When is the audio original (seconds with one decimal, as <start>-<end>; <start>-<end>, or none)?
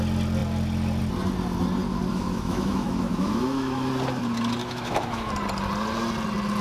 0.0-2.1; 3.9-4.6; 5.3-6.6